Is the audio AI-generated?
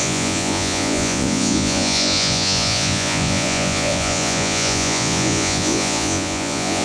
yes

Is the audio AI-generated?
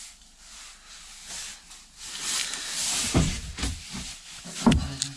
no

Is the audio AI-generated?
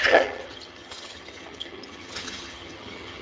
yes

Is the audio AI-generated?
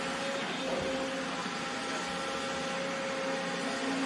no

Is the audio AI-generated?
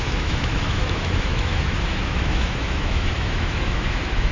yes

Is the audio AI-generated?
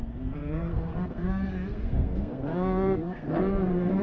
yes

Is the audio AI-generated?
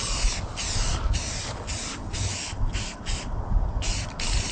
no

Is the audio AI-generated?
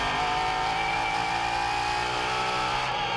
no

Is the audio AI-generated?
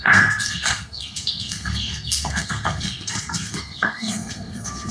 yes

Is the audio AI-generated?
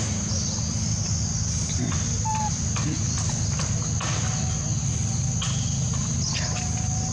no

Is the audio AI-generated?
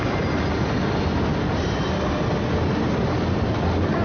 no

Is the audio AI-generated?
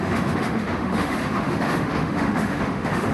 yes